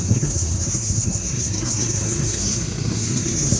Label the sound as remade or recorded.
remade